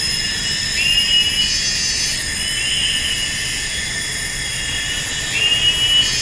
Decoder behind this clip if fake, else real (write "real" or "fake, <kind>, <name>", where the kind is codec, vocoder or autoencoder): real